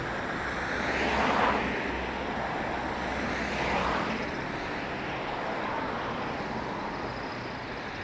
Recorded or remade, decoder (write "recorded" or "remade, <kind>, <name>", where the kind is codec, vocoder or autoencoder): recorded